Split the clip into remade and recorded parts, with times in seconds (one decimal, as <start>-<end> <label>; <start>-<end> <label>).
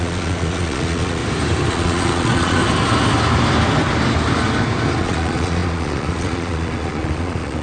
0.0-1.2 remade; 1.2-1.7 recorded; 1.7-2.6 remade; 2.6-5.0 recorded; 5.0-7.6 remade